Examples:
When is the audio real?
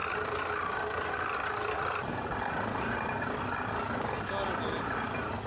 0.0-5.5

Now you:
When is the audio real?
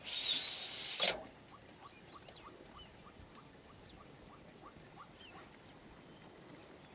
0.0-6.9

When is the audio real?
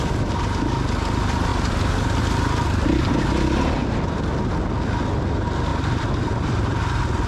0.0-5.7; 6.8-7.3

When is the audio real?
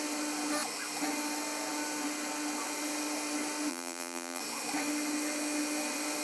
0.0-3.7; 4.4-6.2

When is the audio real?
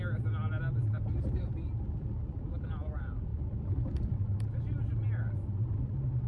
0.0-3.3; 4.2-6.3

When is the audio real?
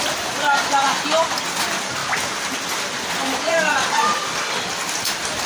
2.0-4.7